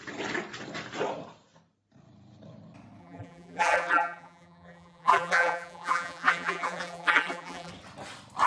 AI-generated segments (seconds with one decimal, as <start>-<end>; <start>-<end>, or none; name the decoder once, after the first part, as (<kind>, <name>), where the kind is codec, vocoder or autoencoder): 3.0-7.7 (vocoder, BigVGAN v2)